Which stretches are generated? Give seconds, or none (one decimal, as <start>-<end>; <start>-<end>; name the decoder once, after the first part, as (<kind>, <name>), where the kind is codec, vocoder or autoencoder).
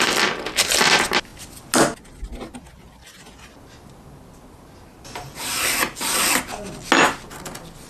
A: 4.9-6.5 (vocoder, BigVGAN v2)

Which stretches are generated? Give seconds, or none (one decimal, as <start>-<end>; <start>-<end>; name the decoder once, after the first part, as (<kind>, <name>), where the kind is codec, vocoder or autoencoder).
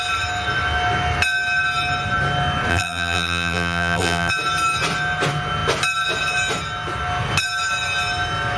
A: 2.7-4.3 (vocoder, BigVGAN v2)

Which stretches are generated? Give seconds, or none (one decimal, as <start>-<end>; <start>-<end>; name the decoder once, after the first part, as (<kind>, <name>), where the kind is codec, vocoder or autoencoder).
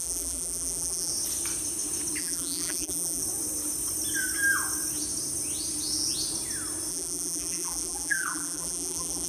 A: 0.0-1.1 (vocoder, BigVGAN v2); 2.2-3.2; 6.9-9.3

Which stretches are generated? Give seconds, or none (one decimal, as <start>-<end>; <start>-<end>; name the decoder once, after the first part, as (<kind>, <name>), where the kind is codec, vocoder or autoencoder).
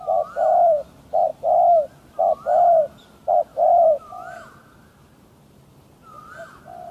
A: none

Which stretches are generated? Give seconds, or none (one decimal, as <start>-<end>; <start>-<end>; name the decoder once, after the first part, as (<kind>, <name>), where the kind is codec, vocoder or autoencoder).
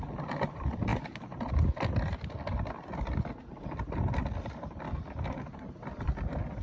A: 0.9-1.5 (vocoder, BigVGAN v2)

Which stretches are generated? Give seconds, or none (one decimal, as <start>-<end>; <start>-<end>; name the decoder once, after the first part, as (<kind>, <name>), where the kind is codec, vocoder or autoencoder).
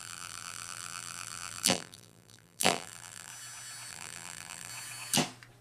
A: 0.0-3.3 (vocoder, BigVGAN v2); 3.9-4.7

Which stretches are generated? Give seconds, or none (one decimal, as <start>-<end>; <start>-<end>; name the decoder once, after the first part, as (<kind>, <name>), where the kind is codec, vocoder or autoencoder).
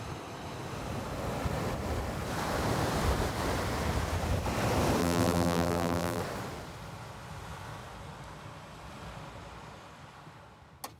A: 5.0-6.2 (vocoder, BigVGAN v2)